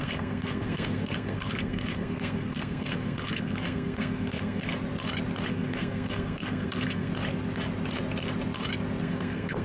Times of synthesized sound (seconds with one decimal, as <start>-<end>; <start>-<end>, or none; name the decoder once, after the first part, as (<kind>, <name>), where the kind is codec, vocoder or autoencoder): 0.0-4.7 (codec, SNAC); 5.5-7.1; 9.0-9.6